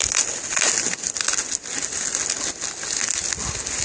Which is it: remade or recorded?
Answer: recorded